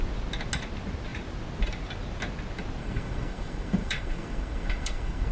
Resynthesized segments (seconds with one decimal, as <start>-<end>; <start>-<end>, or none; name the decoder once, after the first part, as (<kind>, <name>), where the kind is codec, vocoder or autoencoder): 2.8-5.3 (codec, SNAC)